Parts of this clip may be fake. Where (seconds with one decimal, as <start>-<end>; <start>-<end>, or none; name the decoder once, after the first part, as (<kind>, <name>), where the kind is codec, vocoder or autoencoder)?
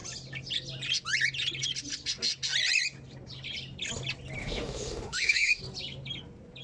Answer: 4.4-5.6 (autoencoder, DAC-VAE)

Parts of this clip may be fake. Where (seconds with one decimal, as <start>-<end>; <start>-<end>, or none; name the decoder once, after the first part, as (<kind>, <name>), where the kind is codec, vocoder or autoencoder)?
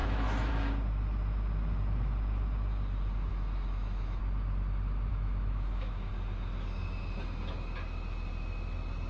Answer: 0.0-0.5 (autoencoder, DAC-VAE); 3.3-4.2; 5.1-6.1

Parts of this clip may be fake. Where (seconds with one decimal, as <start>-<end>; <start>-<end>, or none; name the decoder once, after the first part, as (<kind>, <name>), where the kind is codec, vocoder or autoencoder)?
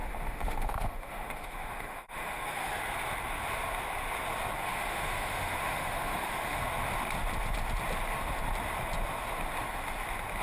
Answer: 0.0-2.7 (autoencoder, DAC-VAE); 4.6-6.6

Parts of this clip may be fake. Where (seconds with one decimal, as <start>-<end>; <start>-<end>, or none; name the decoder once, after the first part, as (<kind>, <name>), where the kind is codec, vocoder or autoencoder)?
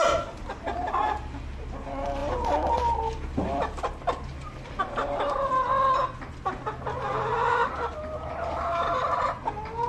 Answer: none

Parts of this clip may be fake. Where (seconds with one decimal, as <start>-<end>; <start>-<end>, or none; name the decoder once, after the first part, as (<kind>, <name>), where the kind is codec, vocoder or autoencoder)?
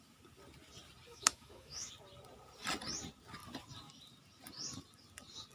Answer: 1.1-1.9 (autoencoder, DAC-VAE)